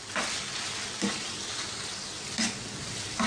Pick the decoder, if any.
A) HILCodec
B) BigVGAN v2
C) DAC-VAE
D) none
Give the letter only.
D